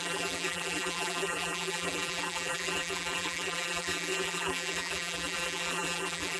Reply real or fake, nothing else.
fake